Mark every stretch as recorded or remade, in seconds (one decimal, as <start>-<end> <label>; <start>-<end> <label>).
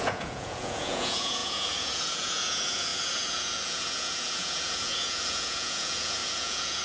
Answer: 0.0-6.8 remade